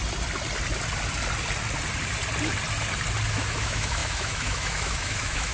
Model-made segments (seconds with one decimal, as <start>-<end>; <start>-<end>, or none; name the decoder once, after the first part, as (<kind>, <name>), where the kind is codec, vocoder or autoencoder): 3.3-5.5 (autoencoder, DAC-VAE)